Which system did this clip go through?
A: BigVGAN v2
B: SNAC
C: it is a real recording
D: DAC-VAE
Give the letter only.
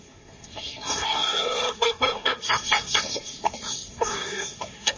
B